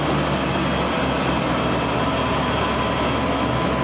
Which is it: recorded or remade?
recorded